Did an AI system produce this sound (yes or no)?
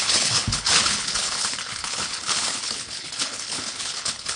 yes